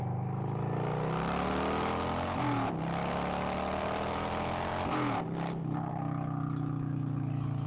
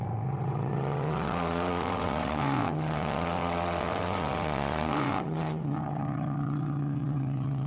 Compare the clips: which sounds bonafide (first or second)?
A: first